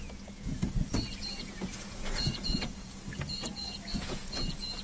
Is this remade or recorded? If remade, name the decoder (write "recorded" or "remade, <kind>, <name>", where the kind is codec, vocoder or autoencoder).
remade, vocoder, Vocos